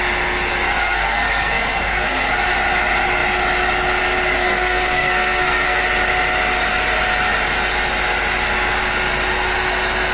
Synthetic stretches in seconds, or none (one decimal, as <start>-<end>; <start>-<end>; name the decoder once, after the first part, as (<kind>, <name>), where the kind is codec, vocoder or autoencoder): 0.8-2.3 (codec, SNAC); 4.4-5.8